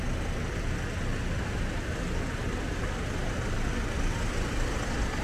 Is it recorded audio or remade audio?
recorded